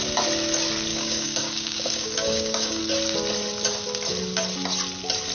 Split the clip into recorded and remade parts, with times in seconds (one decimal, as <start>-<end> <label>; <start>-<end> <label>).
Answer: 0.0-0.9 recorded; 0.9-2.8 remade; 2.8-5.3 recorded

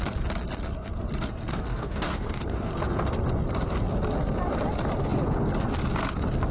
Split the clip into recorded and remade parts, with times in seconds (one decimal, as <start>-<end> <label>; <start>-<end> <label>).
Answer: 0.0-1.7 recorded; 1.7-2.7 remade; 2.7-6.5 recorded

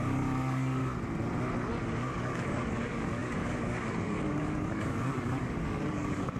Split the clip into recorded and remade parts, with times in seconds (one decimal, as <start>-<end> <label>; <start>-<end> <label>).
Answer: 0.0-0.8 remade; 0.8-1.9 recorded; 1.9-6.4 remade

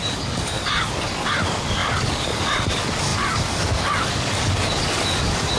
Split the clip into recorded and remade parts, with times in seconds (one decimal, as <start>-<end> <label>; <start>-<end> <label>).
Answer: 0.0-5.6 remade

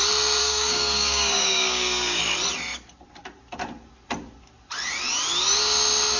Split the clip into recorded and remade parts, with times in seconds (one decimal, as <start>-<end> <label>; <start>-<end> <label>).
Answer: 0.0-0.4 recorded; 0.4-2.2 remade; 2.2-6.2 recorded

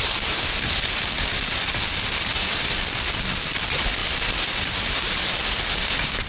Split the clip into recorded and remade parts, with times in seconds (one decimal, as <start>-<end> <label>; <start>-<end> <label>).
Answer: 0.0-6.3 recorded

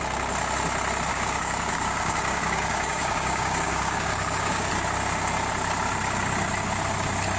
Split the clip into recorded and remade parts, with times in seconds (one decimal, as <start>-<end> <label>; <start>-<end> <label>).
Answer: 0.0-1.1 recorded; 1.1-4.7 remade; 4.7-7.4 recorded

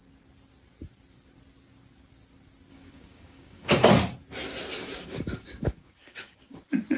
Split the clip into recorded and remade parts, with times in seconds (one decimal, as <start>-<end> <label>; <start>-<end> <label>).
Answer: 0.0-2.7 recorded; 2.7-3.7 remade; 3.7-4.8 recorded; 4.8-6.6 remade; 6.6-7.0 recorded